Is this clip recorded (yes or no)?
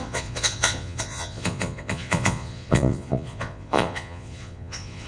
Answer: no